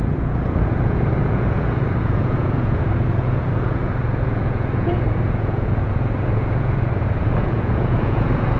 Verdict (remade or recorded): remade